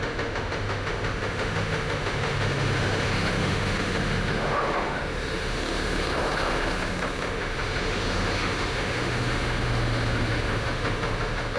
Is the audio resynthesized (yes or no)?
yes